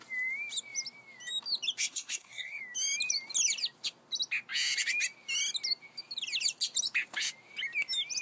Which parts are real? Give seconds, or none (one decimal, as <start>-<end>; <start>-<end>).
0.0-1.8; 2.6-8.2